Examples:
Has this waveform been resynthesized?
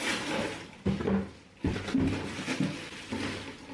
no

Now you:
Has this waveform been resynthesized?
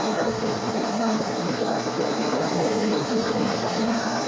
yes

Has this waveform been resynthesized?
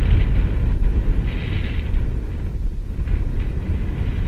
no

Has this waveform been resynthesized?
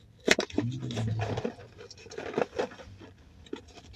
no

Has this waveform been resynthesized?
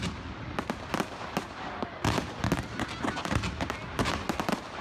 no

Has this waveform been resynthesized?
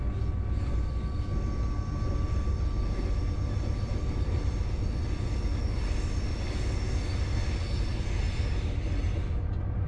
no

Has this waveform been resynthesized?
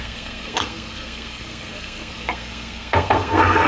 yes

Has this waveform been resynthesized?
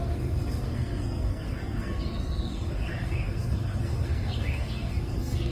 yes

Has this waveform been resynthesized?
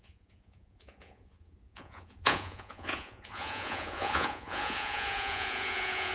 yes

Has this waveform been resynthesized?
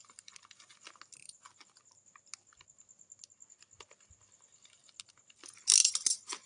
no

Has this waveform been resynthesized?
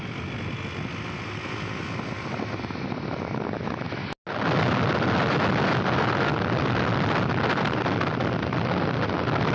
no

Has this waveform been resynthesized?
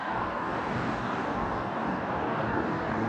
yes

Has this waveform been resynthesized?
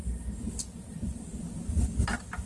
no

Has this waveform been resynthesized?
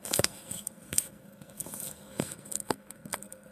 yes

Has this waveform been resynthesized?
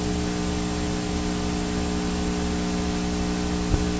no